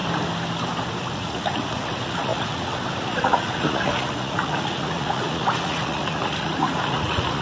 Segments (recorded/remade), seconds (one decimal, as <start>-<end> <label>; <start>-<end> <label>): 0.0-1.1 recorded; 1.1-7.4 remade